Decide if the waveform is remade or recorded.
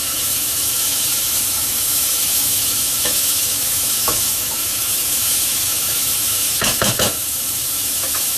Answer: remade